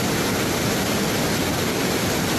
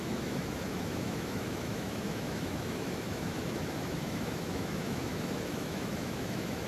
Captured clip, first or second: first